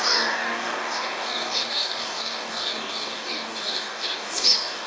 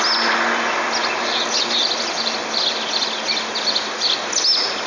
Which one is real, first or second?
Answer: second